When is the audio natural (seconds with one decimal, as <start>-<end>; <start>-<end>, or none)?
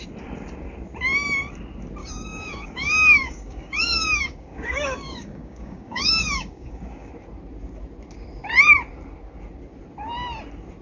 0.0-2.0; 7.1-10.8